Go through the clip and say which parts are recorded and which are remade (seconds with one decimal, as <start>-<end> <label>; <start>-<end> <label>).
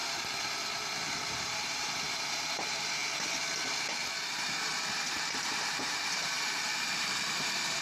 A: 0.0-1.4 recorded; 1.4-3.0 remade; 3.0-4.9 recorded; 4.9-7.8 remade